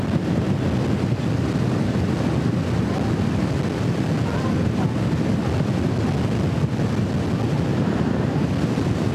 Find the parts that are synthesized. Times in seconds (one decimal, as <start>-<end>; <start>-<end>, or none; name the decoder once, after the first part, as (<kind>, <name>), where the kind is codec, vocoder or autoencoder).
7.7-8.5 (vocoder, BigVGAN v2)